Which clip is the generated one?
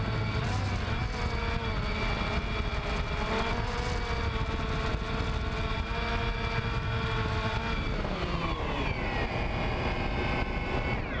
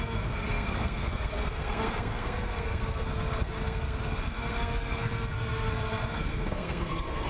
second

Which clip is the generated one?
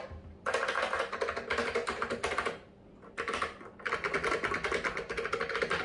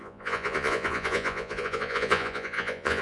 second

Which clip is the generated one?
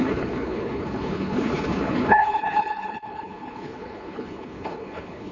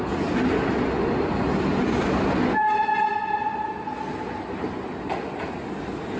first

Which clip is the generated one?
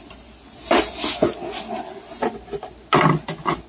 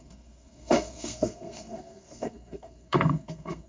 second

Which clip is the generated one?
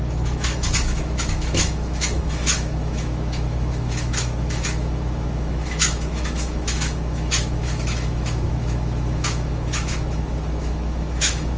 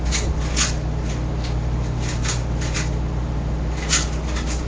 first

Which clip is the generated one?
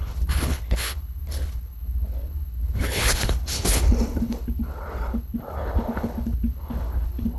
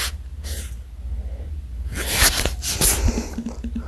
first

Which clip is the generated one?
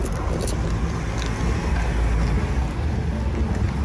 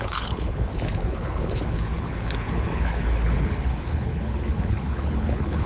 second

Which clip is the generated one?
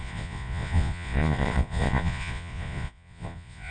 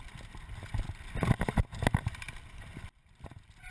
first